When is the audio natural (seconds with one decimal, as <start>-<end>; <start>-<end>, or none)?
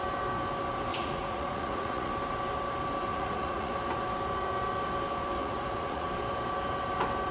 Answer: 0.0-0.9; 2.1-3.1; 3.7-5.4; 6.1-7.3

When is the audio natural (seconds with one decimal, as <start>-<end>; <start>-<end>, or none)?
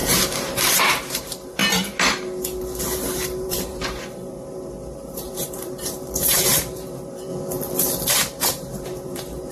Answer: 1.6-2.8; 7.3-8.1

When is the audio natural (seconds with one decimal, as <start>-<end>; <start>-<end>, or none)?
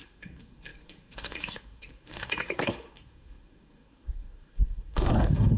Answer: none